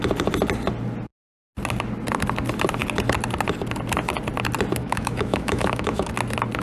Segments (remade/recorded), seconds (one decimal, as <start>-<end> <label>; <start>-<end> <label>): 0.0-4.8 recorded; 4.8-6.1 remade; 6.1-6.6 recorded